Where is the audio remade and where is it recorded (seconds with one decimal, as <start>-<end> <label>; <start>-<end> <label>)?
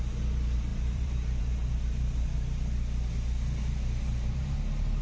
0.0-0.7 recorded; 0.7-1.4 remade; 1.4-5.0 recorded